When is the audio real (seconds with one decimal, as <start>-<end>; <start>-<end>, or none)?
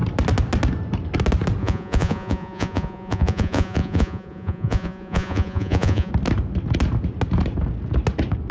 0.0-1.6; 6.1-8.5